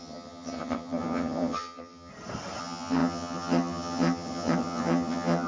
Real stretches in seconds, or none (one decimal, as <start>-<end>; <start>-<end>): 2.1-2.6